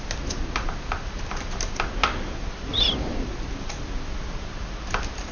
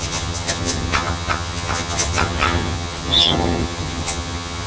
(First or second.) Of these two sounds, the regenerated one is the second